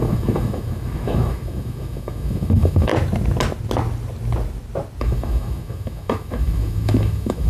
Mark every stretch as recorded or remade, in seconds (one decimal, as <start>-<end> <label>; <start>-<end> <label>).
0.0-2.9 remade; 2.9-5.0 recorded; 5.0-7.5 remade